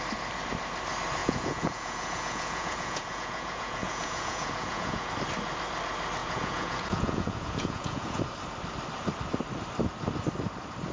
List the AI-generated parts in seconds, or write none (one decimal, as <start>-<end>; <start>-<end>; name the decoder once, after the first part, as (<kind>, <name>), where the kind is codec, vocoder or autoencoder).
1.2-5.1 (vocoder, Vocos); 6.2-8.2